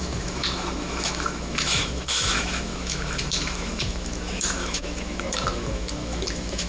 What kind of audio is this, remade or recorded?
remade